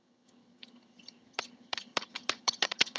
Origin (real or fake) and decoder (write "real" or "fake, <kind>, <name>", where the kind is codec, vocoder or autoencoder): fake, vocoder, HiFi-GAN